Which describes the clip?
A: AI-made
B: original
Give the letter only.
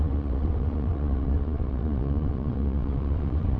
A